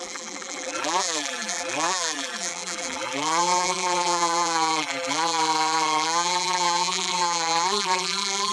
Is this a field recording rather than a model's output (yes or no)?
no